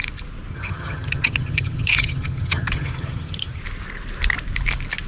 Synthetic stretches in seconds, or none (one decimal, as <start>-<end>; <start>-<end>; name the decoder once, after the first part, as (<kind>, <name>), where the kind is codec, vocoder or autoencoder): 0.5-3.6 (vocoder, HiFi-GAN)